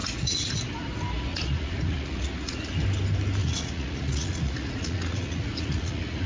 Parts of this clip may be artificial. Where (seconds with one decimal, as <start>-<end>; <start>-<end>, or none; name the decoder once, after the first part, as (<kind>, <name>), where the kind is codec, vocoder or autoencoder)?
0.0-0.6 (vocoder, Vocos); 1.3-2.7; 3.4-6.3